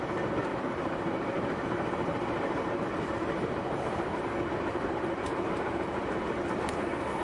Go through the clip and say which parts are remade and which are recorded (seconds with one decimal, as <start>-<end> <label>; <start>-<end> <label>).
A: 0.0-0.5 recorded; 0.5-4.2 remade; 4.2-4.7 recorded; 4.7-6.1 remade; 6.1-7.2 recorded